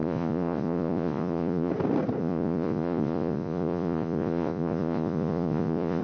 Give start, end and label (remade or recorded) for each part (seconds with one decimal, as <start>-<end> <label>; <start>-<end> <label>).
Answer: 0.0-1.7 remade; 1.7-2.2 recorded; 2.2-6.0 remade